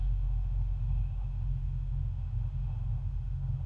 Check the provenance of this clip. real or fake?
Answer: fake